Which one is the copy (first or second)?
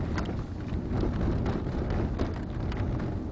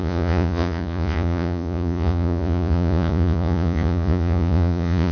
second